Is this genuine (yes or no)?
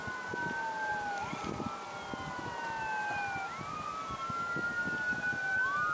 yes